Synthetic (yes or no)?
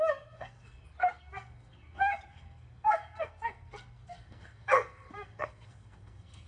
yes